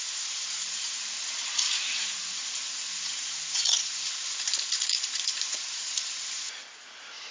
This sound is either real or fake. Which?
fake